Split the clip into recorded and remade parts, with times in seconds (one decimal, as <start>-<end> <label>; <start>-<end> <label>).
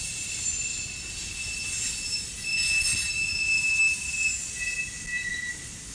0.0-5.9 recorded